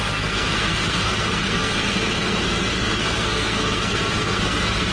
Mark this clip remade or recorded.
remade